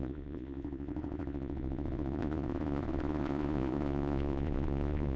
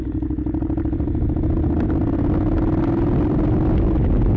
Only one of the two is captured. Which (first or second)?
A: second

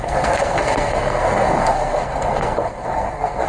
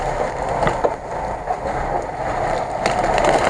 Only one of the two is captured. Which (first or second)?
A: second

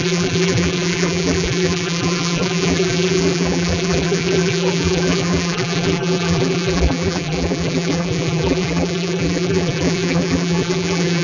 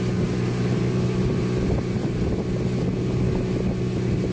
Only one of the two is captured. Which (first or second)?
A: second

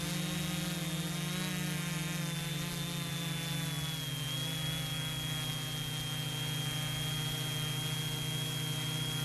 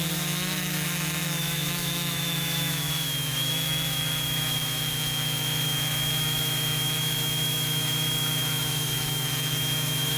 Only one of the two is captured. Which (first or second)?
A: first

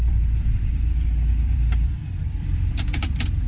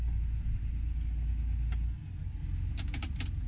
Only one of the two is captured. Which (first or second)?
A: second